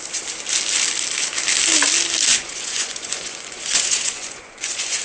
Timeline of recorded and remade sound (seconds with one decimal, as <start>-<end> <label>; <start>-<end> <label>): 0.0-2.3 recorded; 2.3-5.0 remade